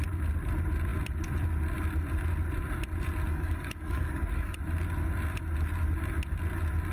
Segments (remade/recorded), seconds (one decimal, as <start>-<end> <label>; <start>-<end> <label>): 0.0-3.3 recorded; 3.3-4.6 remade; 4.6-6.9 recorded